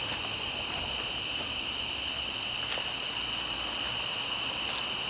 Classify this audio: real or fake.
real